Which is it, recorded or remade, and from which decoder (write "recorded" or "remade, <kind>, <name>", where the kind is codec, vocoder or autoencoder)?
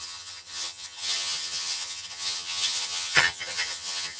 remade, vocoder, HiFi-GAN